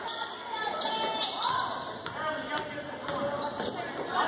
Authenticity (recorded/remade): recorded